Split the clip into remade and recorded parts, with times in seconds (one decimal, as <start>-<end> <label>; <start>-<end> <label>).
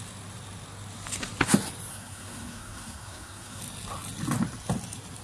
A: 0.0-1.9 recorded; 1.9-3.6 remade; 3.6-5.2 recorded